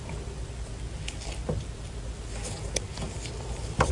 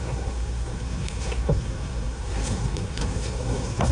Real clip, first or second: first